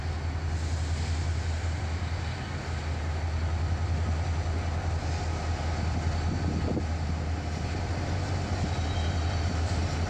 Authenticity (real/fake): real